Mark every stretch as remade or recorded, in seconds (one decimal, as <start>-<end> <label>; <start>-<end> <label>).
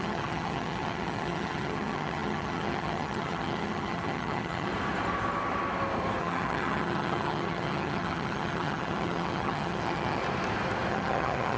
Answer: 0.0-4.7 remade; 4.7-6.2 recorded; 6.2-10.2 remade; 10.2-10.9 recorded; 10.9-11.6 remade